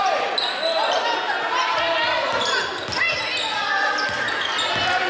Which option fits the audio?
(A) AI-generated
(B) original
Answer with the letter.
B